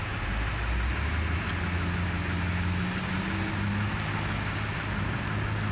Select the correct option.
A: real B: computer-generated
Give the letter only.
A